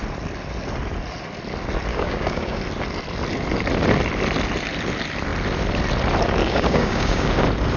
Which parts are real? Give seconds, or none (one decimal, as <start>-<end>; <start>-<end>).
0.0-1.9; 2.6-6.4; 7.3-7.8